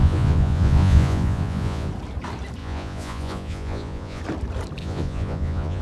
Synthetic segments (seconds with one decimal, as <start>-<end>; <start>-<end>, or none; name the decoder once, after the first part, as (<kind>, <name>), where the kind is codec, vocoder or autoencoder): 0.0-1.9 (vocoder, Vocos); 2.6-4.2; 4.8-5.8

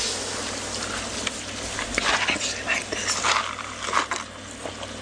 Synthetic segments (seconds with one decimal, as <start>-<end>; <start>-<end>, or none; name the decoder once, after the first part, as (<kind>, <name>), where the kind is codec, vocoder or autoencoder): none